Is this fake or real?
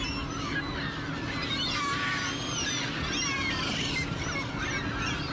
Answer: real